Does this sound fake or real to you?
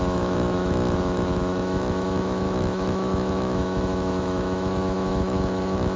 fake